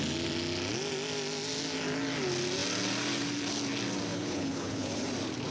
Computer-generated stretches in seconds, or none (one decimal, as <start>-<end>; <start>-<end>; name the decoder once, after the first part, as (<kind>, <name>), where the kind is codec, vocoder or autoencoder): 4.1-5.1 (codec, HILCodec)